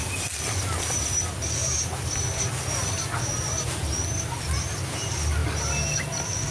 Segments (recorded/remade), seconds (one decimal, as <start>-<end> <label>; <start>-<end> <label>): 0.0-1.6 recorded; 1.6-2.9 remade; 2.9-6.5 recorded